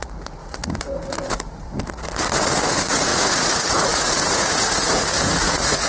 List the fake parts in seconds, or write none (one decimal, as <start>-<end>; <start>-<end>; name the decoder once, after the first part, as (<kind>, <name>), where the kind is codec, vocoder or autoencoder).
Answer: 0.0-5.9 (vocoder, Vocos)